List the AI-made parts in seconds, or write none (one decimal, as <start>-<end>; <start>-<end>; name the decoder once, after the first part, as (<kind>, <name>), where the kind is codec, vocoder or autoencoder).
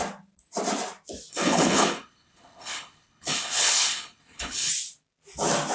1.3-4.7 (codec, HILCodec)